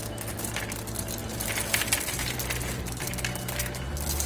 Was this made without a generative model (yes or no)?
yes